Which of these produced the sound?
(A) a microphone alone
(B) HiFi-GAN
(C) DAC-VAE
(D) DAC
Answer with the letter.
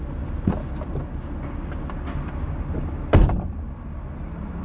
A